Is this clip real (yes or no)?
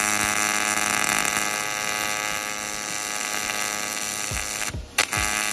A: yes